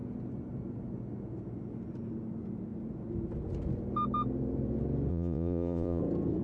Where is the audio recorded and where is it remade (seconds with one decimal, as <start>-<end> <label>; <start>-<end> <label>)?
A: 0.0-5.1 recorded; 5.1-6.0 remade; 6.0-6.4 recorded